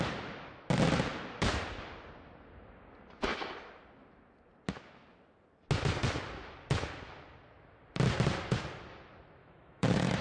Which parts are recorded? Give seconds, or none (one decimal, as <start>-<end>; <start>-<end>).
0.0-9.4